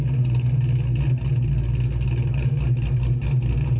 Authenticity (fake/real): real